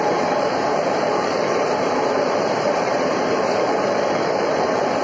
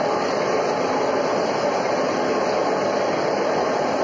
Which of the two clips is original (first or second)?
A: second